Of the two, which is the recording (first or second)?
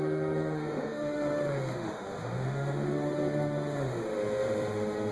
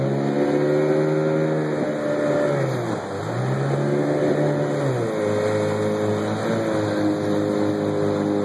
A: second